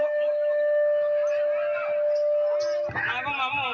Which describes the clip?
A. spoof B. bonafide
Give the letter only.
B